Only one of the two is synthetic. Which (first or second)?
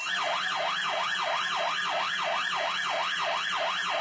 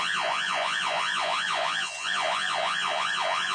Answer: second